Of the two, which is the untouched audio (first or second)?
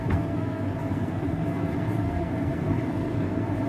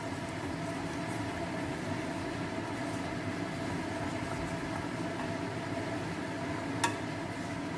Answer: second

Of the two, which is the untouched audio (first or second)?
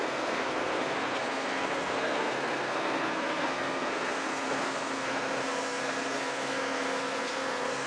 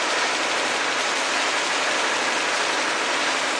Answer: second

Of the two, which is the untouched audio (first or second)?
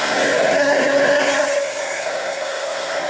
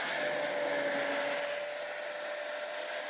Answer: second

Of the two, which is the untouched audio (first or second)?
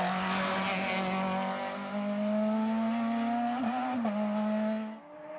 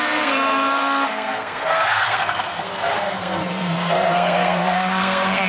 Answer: first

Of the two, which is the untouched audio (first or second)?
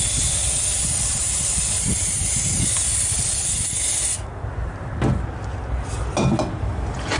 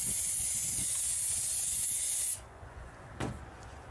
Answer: first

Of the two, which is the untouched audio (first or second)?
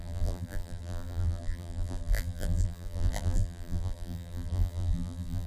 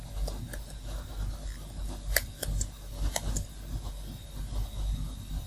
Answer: second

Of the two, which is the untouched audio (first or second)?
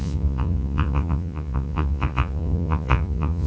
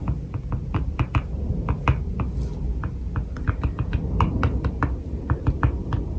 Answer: second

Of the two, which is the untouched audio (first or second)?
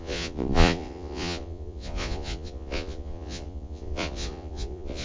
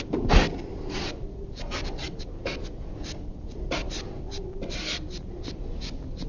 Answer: second